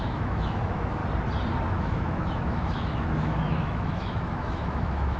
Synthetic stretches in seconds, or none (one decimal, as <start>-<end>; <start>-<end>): 0.0-1.0; 1.7-5.2